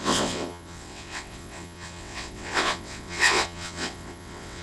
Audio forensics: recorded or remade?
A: remade